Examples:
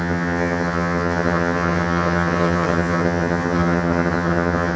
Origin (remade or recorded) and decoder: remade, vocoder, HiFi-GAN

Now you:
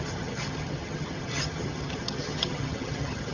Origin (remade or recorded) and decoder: remade, vocoder, HiFi-GAN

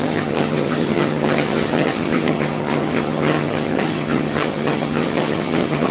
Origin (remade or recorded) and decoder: remade, vocoder, HiFi-GAN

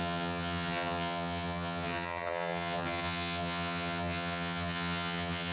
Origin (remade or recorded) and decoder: remade, vocoder, HiFi-GAN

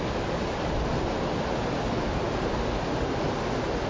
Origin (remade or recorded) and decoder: recorded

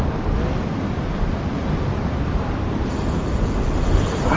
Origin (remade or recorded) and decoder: recorded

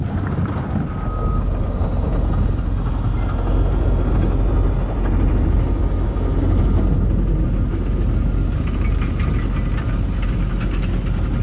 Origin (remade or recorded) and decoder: recorded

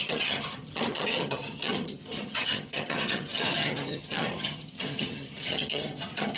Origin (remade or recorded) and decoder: remade, vocoder, HiFi-GAN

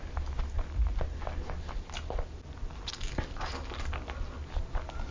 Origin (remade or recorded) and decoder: recorded